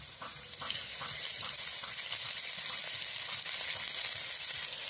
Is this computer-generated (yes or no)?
no